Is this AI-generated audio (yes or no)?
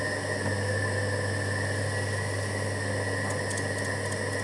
no